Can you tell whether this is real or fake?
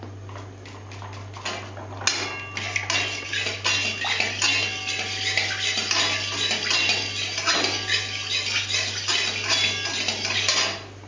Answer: real